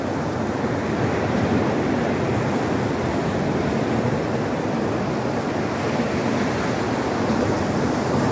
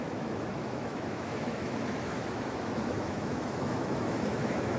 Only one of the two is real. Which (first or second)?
first